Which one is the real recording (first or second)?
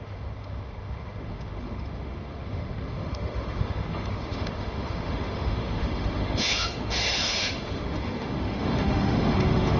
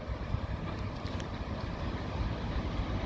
second